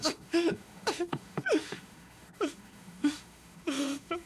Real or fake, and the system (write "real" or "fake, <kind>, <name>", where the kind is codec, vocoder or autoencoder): fake, autoencoder, DAC-VAE